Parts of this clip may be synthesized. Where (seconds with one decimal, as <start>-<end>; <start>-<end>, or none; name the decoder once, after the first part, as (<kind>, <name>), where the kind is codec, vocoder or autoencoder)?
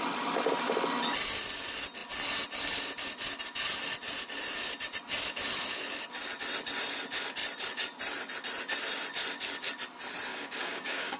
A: 10.3-11.2 (codec, DAC)